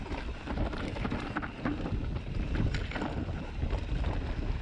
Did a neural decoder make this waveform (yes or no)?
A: no